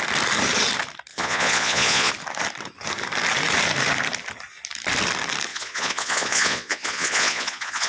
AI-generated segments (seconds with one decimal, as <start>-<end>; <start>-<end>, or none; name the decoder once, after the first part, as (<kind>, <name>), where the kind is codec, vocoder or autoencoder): 1.1-2.1 (vocoder, Vocos); 5.5-7.9